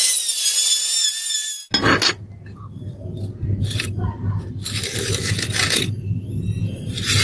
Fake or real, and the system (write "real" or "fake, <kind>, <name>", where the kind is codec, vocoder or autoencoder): real